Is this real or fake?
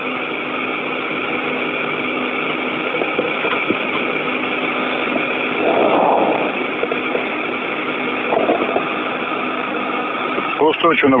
real